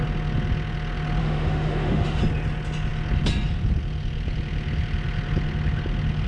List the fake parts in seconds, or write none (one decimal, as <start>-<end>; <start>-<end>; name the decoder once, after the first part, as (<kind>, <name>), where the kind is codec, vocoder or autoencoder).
1.2-2.2 (autoencoder, DAC-VAE)